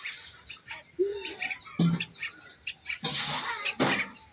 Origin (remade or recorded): recorded